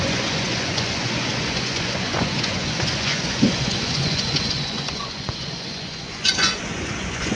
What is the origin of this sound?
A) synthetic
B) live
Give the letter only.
A